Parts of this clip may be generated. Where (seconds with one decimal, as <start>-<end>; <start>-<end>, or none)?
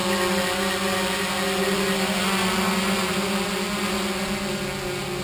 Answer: none